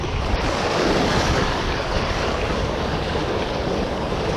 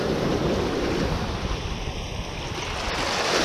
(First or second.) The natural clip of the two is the second